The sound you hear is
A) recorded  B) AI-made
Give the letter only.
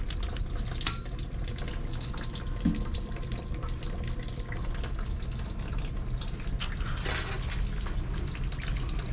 A